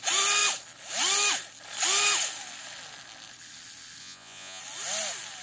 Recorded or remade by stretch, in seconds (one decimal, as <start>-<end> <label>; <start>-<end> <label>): 0.0-4.0 recorded; 4.0-4.6 remade; 4.6-5.4 recorded